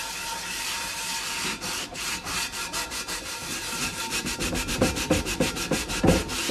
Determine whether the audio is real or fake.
fake